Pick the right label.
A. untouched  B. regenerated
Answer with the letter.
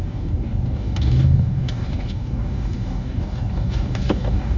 B